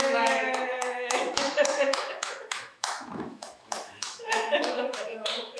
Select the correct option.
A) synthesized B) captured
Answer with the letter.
A